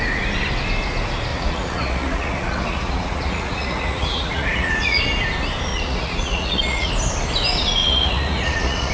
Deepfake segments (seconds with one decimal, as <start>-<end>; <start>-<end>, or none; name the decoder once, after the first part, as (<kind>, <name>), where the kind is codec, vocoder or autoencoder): 1.3-5.0 (vocoder, Vocos); 5.7-6.9; 7.8-8.9